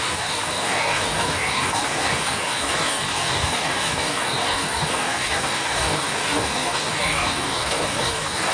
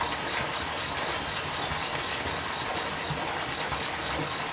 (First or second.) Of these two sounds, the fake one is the first